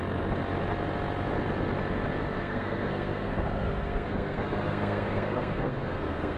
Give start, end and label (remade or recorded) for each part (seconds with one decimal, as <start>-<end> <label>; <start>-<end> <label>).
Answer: 0.0-2.4 recorded; 2.4-6.4 remade